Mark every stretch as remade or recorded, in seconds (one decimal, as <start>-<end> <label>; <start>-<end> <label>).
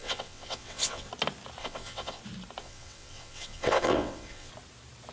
0.0-1.1 remade; 1.1-1.6 recorded; 1.6-2.2 remade; 2.2-2.6 recorded; 2.6-4.5 remade; 4.5-5.1 recorded